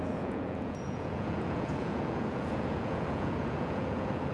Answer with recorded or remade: remade